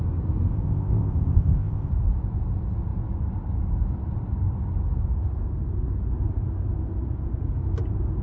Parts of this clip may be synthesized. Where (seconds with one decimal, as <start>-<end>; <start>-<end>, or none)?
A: 0.5-1.9